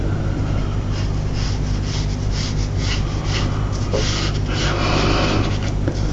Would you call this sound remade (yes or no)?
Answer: no